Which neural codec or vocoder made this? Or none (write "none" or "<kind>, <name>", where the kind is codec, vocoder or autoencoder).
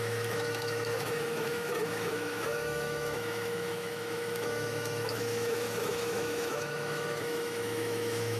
autoencoder, DAC-VAE